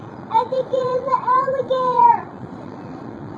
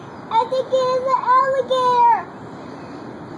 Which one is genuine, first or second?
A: second